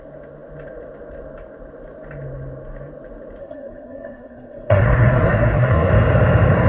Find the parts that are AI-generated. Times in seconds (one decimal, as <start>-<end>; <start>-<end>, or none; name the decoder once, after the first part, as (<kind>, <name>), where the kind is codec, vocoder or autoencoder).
3.4-5.9 (codec, SNAC)